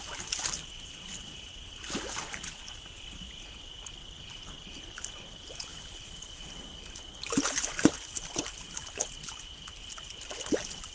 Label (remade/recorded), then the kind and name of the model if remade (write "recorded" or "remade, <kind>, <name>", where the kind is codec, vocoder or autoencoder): recorded